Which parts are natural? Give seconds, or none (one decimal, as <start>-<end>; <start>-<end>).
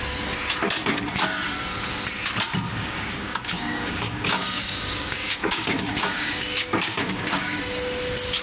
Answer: 0.0-2.7; 7.6-8.4